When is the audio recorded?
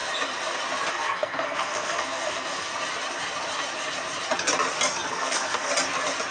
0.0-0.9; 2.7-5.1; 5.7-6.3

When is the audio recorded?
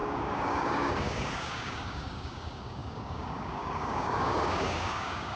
none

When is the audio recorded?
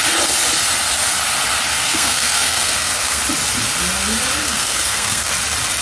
0.0-1.7; 3.2-4.4; 5.3-5.8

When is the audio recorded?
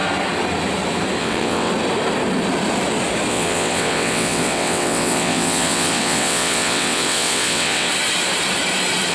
0.0-1.2; 1.7-3.3; 7.9-9.1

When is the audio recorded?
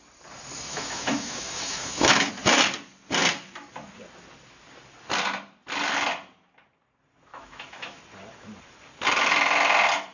0.0-0.7; 2.3-7.3; 8.0-10.1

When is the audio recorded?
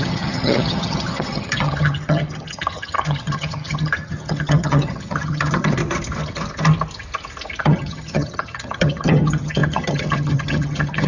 5.8-7.6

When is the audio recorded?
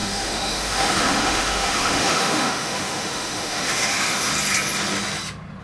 4.3-5.6